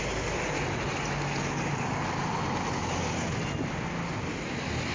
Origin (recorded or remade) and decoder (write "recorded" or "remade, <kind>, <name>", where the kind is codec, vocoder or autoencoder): recorded